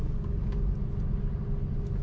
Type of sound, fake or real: real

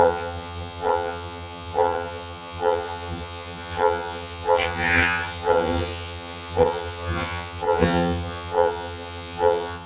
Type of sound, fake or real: fake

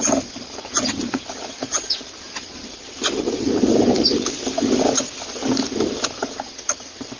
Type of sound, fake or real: real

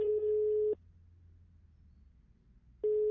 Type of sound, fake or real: real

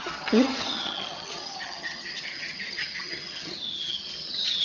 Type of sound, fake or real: fake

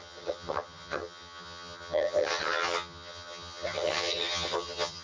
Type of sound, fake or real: fake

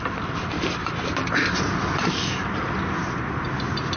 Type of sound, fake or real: real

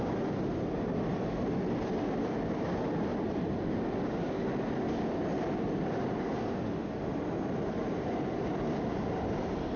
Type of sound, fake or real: real